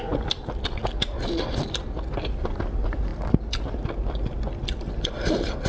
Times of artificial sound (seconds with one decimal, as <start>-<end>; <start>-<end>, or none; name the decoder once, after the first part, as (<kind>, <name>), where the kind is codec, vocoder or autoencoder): none